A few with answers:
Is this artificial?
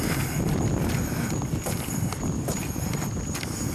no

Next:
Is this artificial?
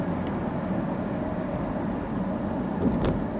no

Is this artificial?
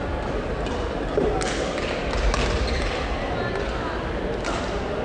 no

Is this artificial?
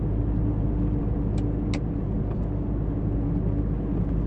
no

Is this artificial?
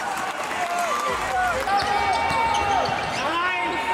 no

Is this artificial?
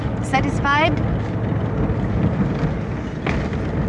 no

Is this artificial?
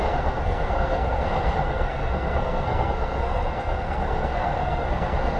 yes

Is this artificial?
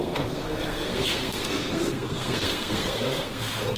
yes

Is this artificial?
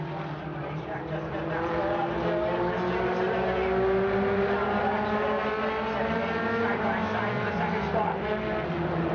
no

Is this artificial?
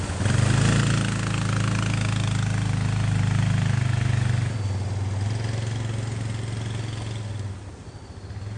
no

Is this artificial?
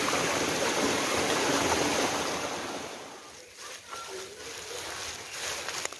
no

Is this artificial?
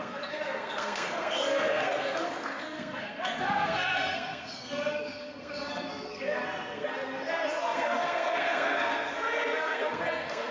yes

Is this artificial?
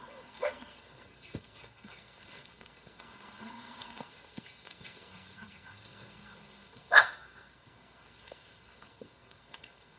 yes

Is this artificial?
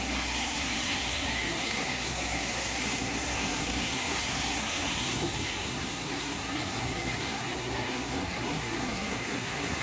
yes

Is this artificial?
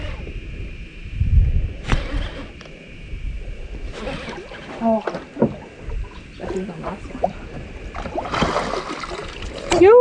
no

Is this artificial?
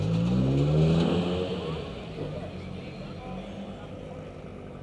no